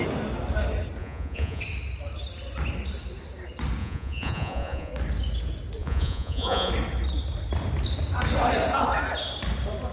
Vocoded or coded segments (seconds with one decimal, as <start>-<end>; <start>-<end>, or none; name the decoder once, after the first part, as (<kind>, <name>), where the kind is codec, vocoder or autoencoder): 1.0-1.6 (vocoder, Vocos); 3.8-4.9; 5.8-6.7